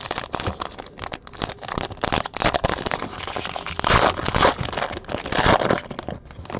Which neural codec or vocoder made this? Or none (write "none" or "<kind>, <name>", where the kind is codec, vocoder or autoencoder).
none